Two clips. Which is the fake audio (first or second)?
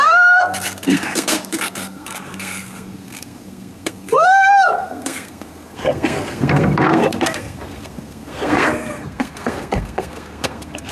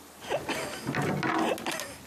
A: first